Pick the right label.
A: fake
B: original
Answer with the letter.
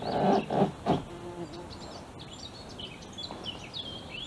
B